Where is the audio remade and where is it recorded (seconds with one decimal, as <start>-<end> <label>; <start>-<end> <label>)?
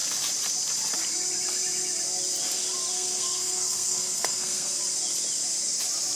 0.0-2.9 recorded; 2.9-4.8 remade; 4.8-6.2 recorded